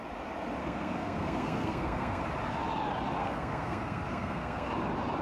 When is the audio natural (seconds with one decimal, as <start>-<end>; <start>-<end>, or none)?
0.0-0.6; 2.2-3.2; 4.7-5.2

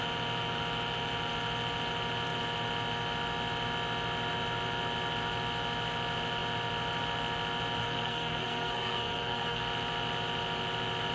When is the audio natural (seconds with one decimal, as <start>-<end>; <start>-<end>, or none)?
0.0-7.8; 9.6-11.1

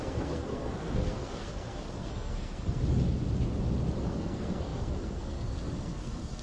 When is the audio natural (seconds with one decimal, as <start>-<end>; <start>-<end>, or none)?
2.8-4.0

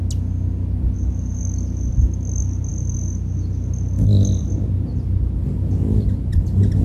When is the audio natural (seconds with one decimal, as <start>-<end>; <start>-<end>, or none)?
0.0-6.8

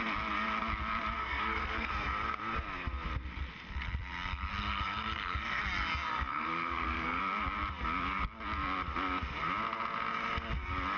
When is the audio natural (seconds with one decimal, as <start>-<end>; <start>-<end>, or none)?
0.0-1.2; 1.9-4.5; 5.6-6.3; 7.2-11.0

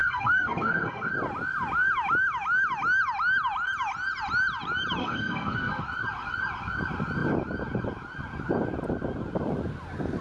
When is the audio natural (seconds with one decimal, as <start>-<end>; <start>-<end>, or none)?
1.1-5.0; 5.8-10.2

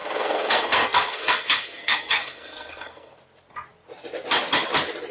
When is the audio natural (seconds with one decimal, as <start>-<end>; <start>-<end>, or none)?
3.1-5.1